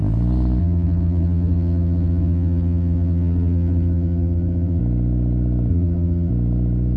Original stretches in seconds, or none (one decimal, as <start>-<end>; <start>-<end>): 0.0-0.6; 4.8-5.7; 6.3-7.0